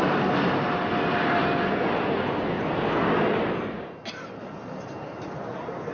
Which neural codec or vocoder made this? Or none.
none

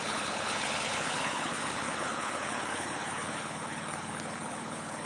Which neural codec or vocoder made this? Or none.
codec, HILCodec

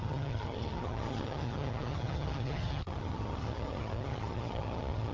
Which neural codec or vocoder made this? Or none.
vocoder, HiFi-GAN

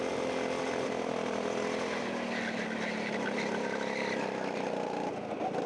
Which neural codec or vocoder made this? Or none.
none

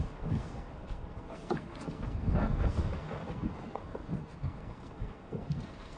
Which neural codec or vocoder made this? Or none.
codec, SNAC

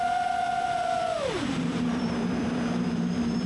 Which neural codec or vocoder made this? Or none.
vocoder, BigVGAN v2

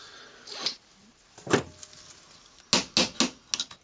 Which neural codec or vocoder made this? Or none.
none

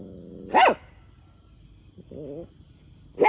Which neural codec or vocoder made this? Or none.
none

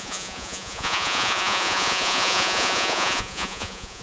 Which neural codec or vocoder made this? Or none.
vocoder, Vocos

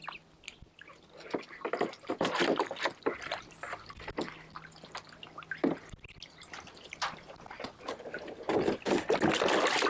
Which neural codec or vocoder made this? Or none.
none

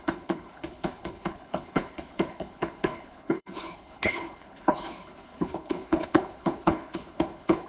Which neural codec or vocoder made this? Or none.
codec, HILCodec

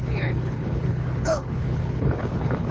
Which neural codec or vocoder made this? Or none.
codec, HILCodec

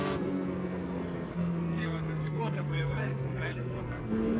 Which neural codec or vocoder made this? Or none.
codec, SNAC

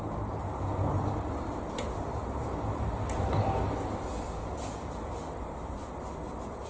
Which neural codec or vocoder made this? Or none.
none